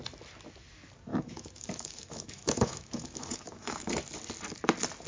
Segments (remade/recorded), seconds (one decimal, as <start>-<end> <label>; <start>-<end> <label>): 0.0-1.1 recorded; 1.1-3.9 remade; 3.9-5.1 recorded